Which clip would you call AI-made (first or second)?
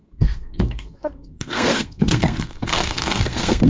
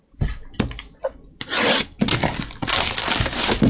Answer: first